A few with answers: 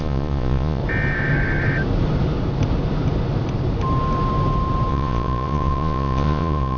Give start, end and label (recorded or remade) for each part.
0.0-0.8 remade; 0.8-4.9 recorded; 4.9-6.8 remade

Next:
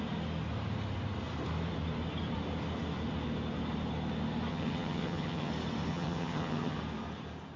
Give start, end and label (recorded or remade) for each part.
0.0-4.5 recorded; 4.5-5.5 remade; 5.5-5.9 recorded; 5.9-6.8 remade; 6.8-7.6 recorded